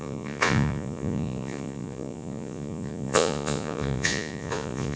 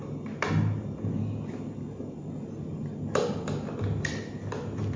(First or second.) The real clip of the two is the second